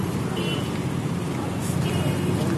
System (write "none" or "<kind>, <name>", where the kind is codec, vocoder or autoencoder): none